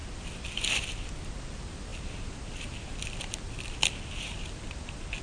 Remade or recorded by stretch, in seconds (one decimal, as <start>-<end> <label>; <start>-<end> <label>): 0.0-5.2 recorded